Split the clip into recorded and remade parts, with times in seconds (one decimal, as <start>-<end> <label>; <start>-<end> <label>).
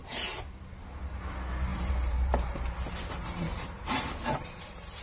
0.0-1.7 recorded; 1.7-2.3 remade; 2.3-3.5 recorded; 3.5-5.0 remade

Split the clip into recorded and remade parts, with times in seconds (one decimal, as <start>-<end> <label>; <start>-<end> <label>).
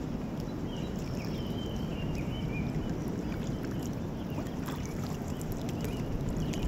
0.0-6.7 remade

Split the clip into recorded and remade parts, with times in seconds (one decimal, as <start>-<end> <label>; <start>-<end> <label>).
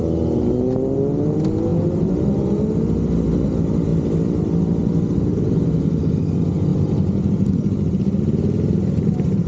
0.0-3.9 recorded; 3.9-6.2 remade; 6.2-6.7 recorded; 6.7-8.2 remade; 8.2-9.5 recorded